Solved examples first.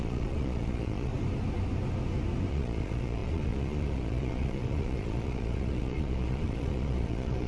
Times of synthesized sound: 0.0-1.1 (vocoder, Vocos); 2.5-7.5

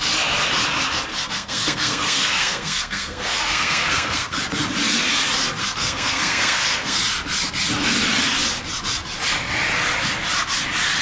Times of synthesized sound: 1.1-4.4 (codec, SNAC); 5.6-7.0

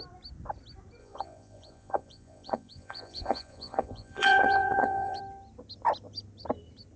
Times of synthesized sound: 1.0-5.2 (vocoder, Vocos)

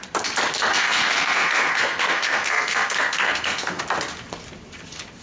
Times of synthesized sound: 0.7-3.8 (codec, SNAC)

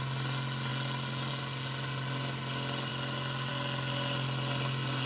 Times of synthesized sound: none